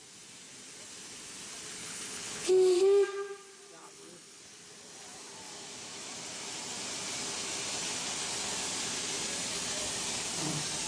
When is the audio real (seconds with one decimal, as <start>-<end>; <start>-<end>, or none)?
0.0-1.8; 2.5-3.8; 4.4-10.9